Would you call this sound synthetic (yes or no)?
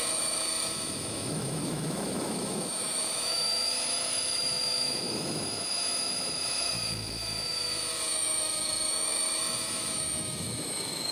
yes